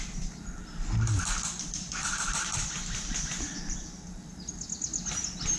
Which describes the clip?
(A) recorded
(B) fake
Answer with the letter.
A